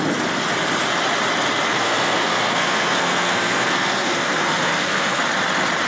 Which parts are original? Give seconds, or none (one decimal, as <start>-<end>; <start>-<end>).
0.0-1.7; 5.2-5.9